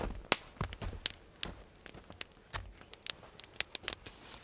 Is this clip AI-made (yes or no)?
no